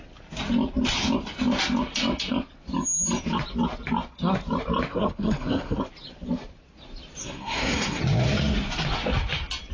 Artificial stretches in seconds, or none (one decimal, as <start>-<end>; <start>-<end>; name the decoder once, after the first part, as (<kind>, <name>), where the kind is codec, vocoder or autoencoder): 4.9-5.8 (codec, SNAC); 7.2-8.0